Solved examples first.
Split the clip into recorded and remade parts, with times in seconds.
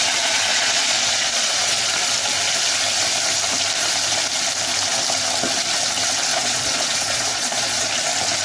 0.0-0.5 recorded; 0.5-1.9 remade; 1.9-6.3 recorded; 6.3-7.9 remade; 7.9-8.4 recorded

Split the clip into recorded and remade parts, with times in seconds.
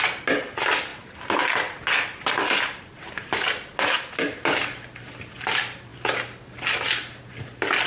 0.0-7.9 recorded